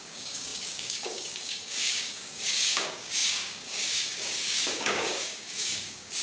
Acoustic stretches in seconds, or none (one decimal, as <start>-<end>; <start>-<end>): none